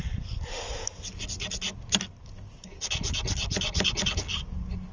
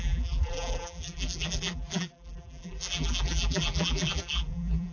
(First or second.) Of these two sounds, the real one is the first